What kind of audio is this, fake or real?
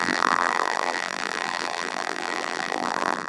fake